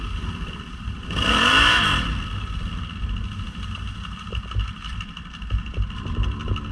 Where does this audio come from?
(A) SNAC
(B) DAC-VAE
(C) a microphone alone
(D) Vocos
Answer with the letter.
C